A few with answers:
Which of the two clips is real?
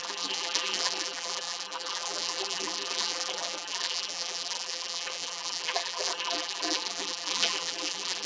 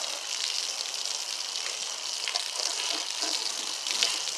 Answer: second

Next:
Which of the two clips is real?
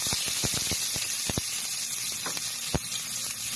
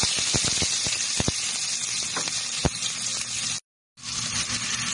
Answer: second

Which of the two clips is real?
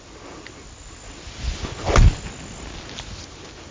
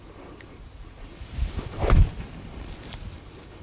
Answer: first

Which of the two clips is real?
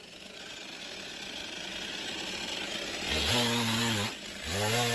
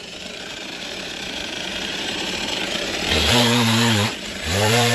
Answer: first